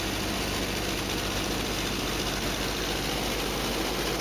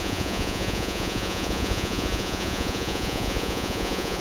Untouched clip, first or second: first